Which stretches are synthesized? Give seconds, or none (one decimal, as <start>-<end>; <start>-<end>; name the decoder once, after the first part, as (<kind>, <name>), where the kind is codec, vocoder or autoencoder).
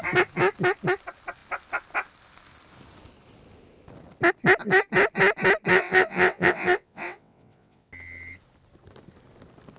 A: 5.7-7.9 (vocoder, WaveNeXt)